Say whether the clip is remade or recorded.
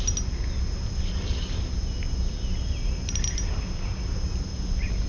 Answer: recorded